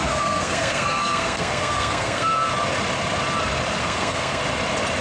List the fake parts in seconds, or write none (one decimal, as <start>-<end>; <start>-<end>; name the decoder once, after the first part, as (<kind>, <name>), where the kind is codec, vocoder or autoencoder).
0.0-2.5 (codec, SNAC); 3.8-4.4

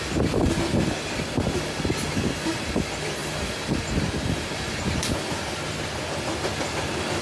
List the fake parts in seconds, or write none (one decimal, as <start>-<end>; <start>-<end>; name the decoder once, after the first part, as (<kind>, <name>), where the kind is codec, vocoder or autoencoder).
none

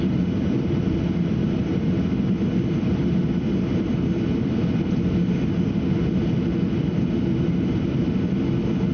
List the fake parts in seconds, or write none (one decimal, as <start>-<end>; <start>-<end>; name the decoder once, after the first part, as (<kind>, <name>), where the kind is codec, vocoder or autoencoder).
none

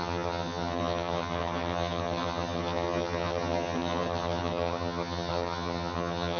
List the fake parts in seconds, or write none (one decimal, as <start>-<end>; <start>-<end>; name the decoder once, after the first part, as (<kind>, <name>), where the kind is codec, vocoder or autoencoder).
0.0-6.4 (vocoder, HiFi-GAN)

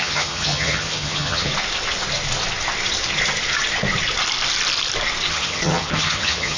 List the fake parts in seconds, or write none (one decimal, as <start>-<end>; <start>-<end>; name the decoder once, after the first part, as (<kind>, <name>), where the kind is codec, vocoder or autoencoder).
0.0-1.5 (vocoder, HiFi-GAN); 5.3-6.6

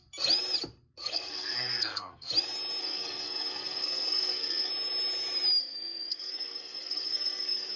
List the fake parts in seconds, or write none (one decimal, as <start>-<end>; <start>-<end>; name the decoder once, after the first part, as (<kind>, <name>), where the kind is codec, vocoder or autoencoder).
1.0-2.3 (codec, SNAC); 2.8-4.7; 5.6-7.8